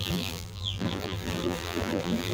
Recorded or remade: remade